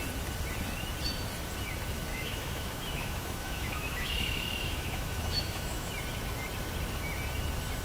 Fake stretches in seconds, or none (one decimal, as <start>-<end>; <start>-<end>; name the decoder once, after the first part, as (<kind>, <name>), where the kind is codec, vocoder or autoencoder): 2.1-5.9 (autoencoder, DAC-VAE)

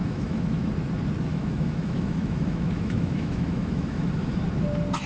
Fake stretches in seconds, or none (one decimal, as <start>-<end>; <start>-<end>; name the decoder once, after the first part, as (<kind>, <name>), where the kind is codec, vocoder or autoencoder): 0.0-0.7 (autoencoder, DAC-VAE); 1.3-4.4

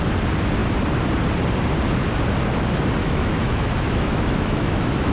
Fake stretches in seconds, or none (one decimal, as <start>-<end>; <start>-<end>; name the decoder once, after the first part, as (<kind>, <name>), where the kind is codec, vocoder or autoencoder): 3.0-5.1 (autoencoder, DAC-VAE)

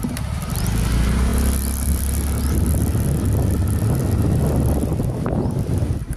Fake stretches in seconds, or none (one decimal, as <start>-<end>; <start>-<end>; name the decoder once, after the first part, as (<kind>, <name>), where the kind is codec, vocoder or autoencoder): none

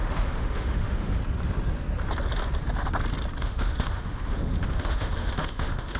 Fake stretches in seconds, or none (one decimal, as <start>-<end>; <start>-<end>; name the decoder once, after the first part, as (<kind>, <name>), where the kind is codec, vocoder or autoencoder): 0.0-1.2 (autoencoder, DAC-VAE); 3.4-6.0